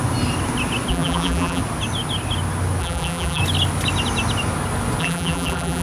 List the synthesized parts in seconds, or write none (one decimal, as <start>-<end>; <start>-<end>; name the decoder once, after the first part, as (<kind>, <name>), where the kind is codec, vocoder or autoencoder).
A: 0.9-1.6 (vocoder, BigVGAN v2); 2.8-3.4; 5.0-5.8